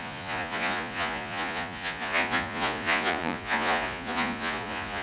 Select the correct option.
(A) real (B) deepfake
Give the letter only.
B